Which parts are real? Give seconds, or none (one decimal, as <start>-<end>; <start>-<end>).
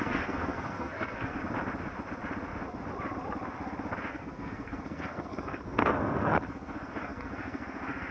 1.4-4.1